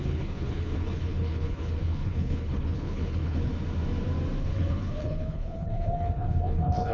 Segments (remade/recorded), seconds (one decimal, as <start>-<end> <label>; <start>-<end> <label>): 0.0-3.5 remade; 3.5-4.4 recorded; 4.4-6.9 remade